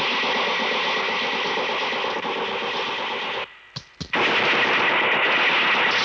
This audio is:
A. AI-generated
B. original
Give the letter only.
B